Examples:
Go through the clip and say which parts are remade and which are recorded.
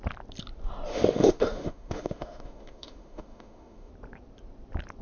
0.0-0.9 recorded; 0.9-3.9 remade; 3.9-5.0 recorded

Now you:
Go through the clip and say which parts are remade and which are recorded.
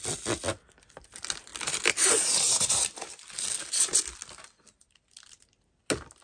0.0-6.2 recorded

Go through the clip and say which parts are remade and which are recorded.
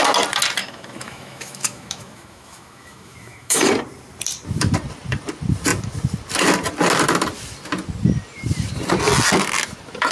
0.0-0.6 recorded; 0.6-3.7 remade; 3.7-10.1 recorded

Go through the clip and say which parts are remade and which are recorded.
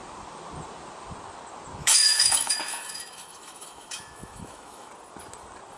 0.0-1.8 recorded; 1.8-4.9 remade; 4.9-5.8 recorded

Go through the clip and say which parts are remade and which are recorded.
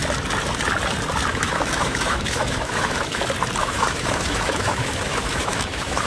0.0-1.3 recorded; 1.3-3.2 remade; 3.2-3.6 recorded; 3.6-6.1 remade